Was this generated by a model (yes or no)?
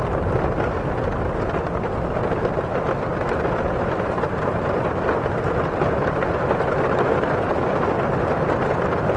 no